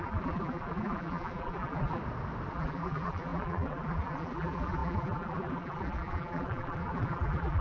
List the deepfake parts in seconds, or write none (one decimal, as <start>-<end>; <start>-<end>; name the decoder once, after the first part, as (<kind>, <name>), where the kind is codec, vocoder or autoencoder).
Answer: 0.0-2.0 (vocoder, BigVGAN v2); 2.5-7.6